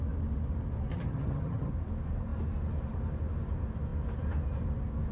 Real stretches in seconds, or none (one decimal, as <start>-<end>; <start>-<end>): 0.0-0.9; 1.7-5.1